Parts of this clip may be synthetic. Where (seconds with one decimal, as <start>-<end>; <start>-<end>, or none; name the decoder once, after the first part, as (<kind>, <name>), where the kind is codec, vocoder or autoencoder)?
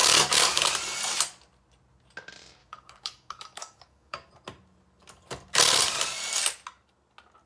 0.0-0.6 (codec, DAC); 2.6-4.3